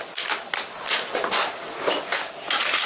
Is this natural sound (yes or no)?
yes